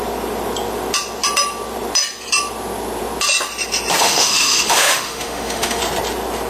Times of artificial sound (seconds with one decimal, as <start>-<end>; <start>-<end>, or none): 4.0-5.8